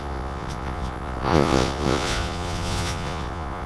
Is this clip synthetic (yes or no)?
yes